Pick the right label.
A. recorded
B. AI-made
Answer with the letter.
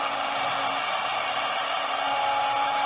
A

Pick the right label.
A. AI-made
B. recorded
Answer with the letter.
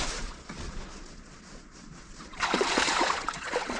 A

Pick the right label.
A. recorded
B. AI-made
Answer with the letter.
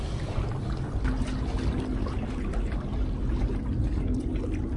A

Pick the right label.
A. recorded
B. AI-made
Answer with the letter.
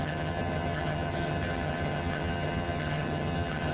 B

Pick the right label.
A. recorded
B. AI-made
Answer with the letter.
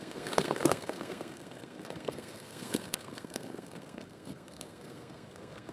B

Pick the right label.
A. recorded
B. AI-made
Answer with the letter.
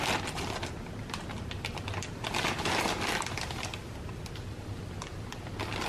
A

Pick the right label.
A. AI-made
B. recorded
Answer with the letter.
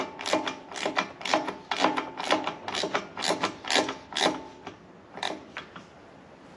B